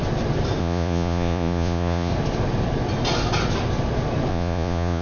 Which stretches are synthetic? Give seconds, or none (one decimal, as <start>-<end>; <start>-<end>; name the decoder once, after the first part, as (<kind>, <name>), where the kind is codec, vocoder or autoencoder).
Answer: 0.6-2.1 (vocoder, Vocos); 4.3-5.0